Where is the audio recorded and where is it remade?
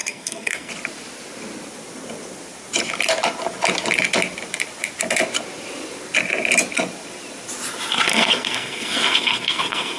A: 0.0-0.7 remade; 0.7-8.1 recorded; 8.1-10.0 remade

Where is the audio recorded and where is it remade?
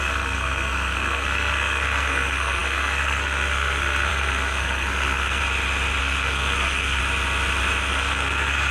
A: 0.0-5.4 remade; 5.4-6.0 recorded; 6.0-7.0 remade; 7.0-7.9 recorded; 7.9-8.7 remade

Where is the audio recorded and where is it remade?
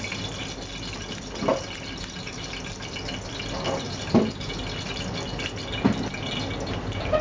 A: 0.0-7.2 recorded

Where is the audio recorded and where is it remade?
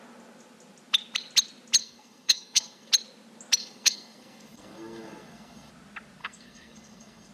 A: 0.0-1.8 recorded; 1.8-2.9 remade; 2.9-3.6 recorded; 3.6-5.7 remade; 5.7-6.2 recorded; 6.2-7.3 remade